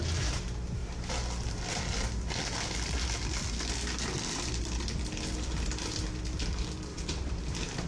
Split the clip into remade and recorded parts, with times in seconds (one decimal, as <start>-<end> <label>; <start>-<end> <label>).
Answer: 0.0-6.9 recorded; 6.9-7.4 remade; 7.4-7.9 recorded